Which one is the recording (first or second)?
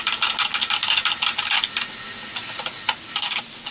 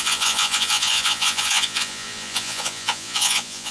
first